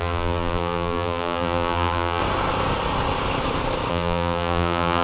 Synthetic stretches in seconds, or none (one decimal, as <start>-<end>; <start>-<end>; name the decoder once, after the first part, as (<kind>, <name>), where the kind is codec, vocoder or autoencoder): 0.0-2.2 (vocoder, BigVGAN v2); 3.9-5.0